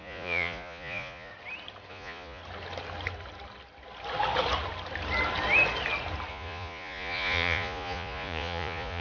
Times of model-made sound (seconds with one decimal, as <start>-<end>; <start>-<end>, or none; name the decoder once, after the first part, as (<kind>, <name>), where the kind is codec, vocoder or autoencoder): 0.0-1.3 (vocoder, Vocos); 1.9-2.4; 6.3-9.0